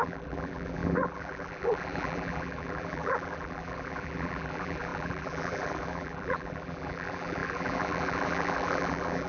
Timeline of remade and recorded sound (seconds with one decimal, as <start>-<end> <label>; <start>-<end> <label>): 0.0-9.3 remade